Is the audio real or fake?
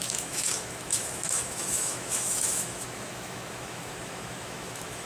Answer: fake